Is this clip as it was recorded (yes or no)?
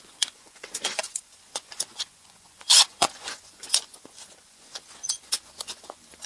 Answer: no